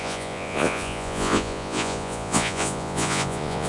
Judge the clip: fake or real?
fake